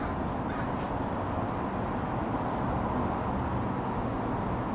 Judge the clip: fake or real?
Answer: real